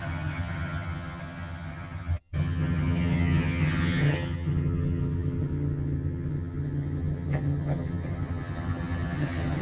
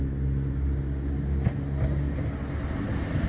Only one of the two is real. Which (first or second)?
second